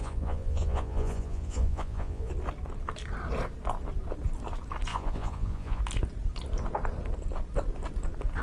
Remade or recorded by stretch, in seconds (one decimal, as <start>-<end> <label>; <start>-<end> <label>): 0.0-2.3 remade; 2.3-4.9 recorded; 4.9-5.8 remade; 5.8-8.4 recorded